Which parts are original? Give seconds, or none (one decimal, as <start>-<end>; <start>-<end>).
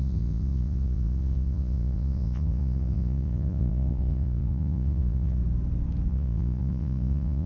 5.4-6.1